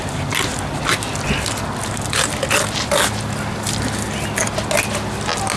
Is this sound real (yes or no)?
yes